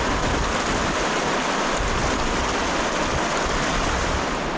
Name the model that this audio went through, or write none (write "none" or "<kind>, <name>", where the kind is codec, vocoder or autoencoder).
none